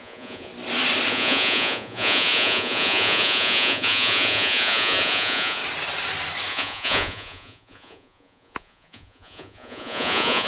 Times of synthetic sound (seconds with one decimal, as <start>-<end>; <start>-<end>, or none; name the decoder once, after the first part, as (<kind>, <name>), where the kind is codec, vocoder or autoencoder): 0.0-0.5 (vocoder, Vocos); 1.1-5.6; 6.5-10.5